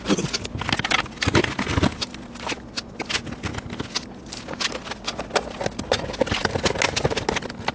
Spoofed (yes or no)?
no